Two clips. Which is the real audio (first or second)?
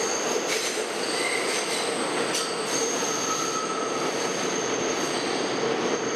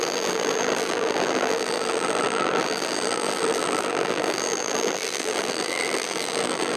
first